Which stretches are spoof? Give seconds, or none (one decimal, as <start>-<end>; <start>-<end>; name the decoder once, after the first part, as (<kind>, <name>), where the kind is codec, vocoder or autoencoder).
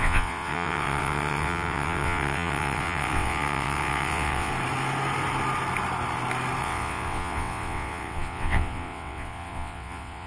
0.0-4.5 (vocoder, WaveNeXt); 6.6-10.3